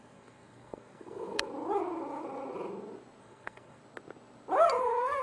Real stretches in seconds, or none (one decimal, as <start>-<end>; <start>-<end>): 1.5-3.2; 3.8-4.8